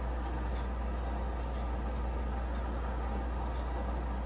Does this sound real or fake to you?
real